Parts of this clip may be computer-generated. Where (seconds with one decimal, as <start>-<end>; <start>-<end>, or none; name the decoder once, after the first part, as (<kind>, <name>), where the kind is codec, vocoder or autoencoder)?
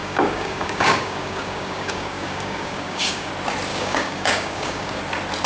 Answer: 0.0-3.3 (codec, DAC); 3.7-5.0